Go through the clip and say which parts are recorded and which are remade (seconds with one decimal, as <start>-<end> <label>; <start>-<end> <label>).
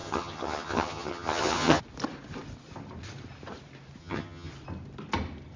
0.0-1.8 remade; 1.8-4.0 recorded; 4.0-4.5 remade; 4.5-5.6 recorded